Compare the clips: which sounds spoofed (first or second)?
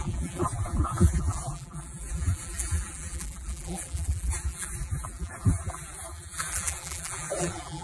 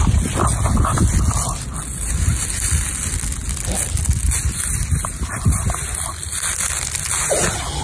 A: first